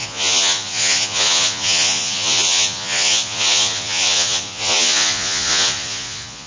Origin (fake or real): fake